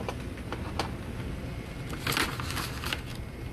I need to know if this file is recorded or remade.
recorded